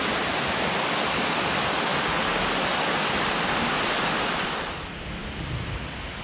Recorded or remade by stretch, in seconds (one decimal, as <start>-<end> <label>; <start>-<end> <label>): 0.0-1.9 remade; 1.9-4.0 recorded; 4.0-6.2 remade